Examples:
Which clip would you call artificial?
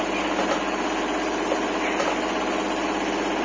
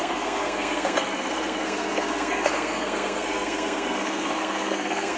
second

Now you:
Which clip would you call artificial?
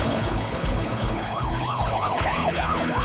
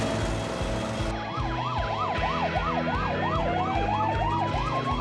first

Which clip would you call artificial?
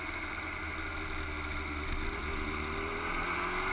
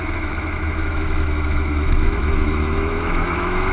second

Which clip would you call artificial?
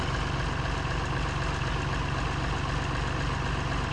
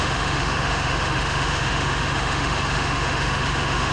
second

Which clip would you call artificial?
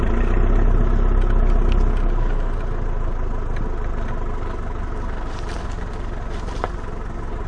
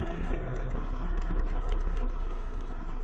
second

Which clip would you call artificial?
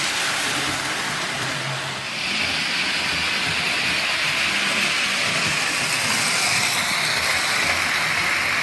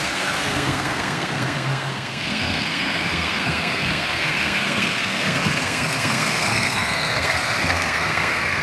second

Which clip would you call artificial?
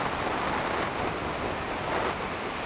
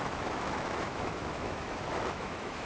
second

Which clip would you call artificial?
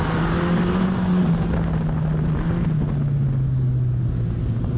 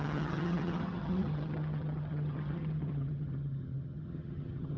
second